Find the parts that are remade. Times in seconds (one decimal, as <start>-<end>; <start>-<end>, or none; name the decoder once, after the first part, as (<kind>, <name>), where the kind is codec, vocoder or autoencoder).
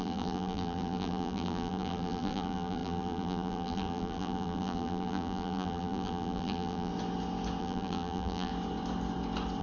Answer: 0.0-6.9 (vocoder, BigVGAN v2); 7.6-8.5